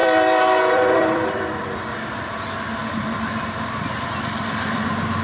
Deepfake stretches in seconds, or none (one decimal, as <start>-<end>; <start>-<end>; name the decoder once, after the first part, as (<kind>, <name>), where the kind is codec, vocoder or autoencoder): 0.0-2.3 (vocoder, BigVGAN v2); 2.8-4.1